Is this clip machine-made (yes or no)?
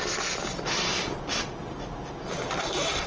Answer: no